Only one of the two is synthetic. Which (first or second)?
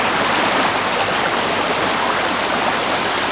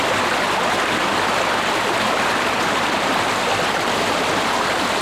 second